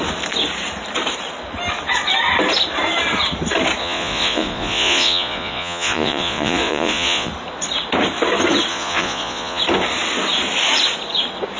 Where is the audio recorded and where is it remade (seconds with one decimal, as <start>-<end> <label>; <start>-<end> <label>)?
0.0-3.8 recorded; 3.8-7.3 remade; 7.3-8.7 recorded; 8.7-9.6 remade; 9.6-11.6 recorded